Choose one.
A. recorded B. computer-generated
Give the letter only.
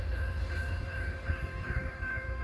B